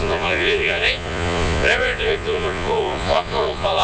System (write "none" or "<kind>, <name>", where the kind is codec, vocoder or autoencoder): vocoder, Vocos